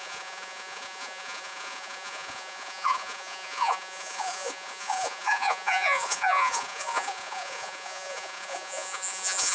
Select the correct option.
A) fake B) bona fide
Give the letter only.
A